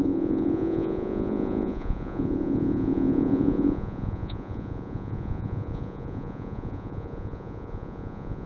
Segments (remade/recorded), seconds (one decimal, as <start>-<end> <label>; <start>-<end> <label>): 0.0-8.5 remade